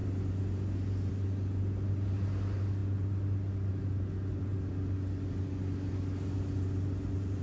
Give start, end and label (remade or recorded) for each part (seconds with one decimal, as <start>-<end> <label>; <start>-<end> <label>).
0.0-7.4 recorded